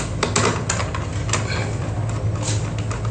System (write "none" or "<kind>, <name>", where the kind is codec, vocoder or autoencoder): none